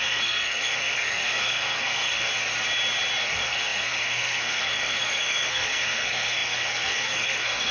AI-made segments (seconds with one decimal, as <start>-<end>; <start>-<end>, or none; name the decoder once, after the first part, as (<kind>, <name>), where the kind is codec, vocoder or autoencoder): 0.0-2.3 (codec, SNAC); 3.2-7.7